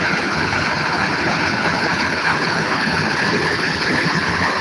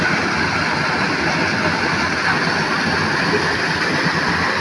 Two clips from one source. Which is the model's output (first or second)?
first